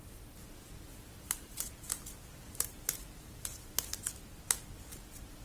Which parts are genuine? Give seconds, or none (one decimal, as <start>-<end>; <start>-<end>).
0.0-0.9; 4.1-5.4